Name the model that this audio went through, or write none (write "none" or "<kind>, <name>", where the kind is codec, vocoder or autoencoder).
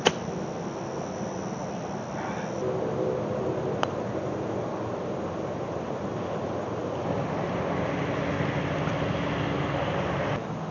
none